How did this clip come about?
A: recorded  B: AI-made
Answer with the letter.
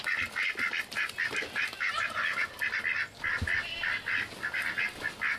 A